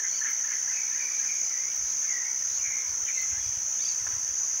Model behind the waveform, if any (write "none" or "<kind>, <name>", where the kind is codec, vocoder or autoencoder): none